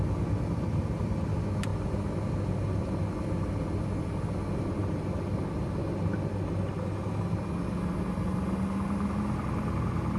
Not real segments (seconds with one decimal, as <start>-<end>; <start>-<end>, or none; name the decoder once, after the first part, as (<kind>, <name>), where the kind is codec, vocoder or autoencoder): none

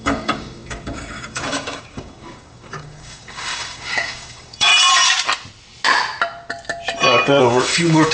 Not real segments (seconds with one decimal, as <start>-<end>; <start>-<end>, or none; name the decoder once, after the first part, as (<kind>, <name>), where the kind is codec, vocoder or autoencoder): 0.0-4.7 (codec, DAC); 7.4-8.1

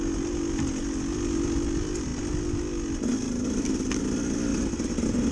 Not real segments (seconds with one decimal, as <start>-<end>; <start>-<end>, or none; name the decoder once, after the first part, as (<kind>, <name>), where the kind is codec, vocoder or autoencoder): none

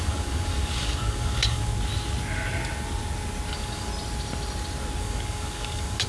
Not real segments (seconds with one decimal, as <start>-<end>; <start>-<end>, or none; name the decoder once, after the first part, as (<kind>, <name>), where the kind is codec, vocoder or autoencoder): 0.0-1.7 (codec, DAC); 3.5-3.9; 5.0-6.1

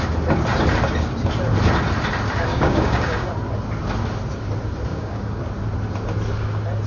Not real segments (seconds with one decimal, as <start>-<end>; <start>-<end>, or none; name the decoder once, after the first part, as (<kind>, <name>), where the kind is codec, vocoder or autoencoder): 2.5-3.3 (codec, DAC); 4.9-5.4

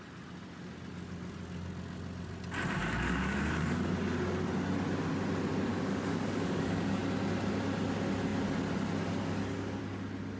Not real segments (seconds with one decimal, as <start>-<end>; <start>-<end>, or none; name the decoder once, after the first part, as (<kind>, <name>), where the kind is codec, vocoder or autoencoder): 2.8-3.9 (codec, DAC); 5.7-7.0